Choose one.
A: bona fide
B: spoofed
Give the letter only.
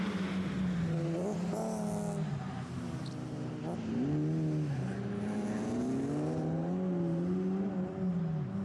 A